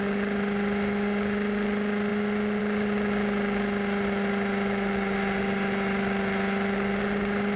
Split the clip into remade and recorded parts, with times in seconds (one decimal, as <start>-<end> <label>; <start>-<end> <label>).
0.0-7.6 recorded